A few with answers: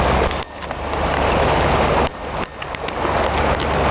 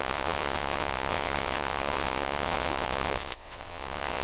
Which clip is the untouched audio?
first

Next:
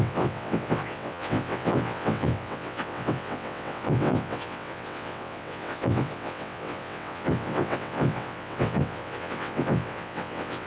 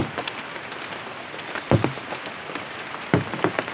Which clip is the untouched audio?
second